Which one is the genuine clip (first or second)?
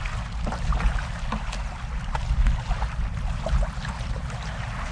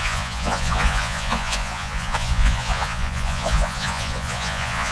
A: first